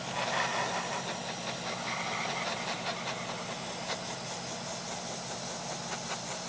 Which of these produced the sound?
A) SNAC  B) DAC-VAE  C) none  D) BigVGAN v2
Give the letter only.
C